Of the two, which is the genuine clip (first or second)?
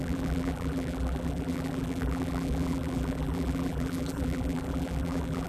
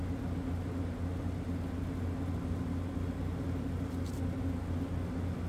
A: second